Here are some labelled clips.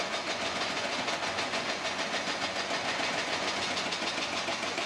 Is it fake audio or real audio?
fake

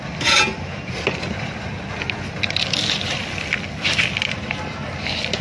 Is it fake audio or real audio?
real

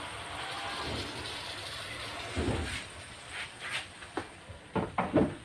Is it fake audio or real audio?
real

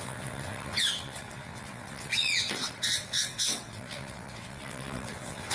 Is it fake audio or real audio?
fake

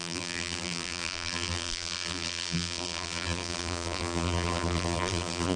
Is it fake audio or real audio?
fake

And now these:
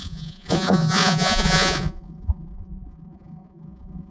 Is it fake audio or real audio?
fake